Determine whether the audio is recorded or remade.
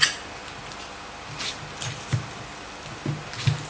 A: recorded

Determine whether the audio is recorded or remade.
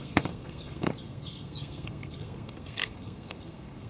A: remade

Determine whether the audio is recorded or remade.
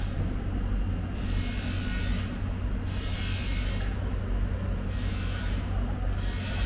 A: recorded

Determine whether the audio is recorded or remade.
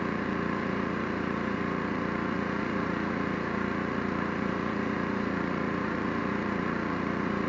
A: remade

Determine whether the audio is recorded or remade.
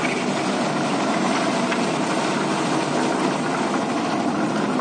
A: recorded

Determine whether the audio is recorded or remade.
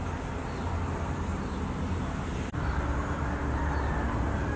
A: recorded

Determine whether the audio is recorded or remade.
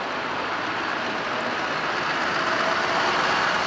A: recorded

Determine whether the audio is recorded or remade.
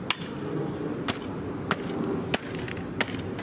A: recorded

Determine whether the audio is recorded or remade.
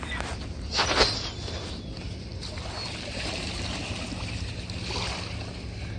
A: recorded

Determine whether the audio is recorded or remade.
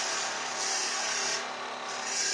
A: recorded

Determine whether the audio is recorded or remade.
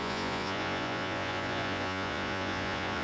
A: remade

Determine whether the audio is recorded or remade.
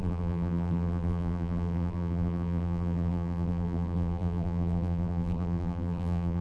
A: remade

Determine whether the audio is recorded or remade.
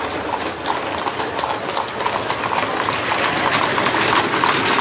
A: recorded